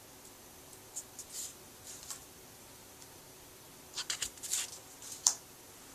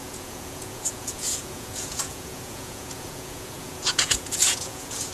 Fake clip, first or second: second